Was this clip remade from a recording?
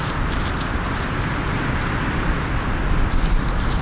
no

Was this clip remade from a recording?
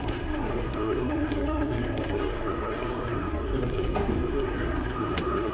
yes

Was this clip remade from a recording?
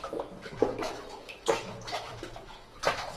yes